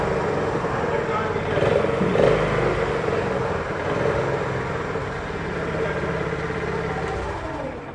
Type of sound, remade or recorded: recorded